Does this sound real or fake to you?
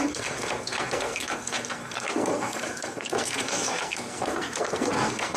fake